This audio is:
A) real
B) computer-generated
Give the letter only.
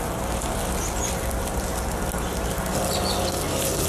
A